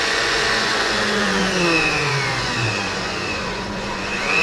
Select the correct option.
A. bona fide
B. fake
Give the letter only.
B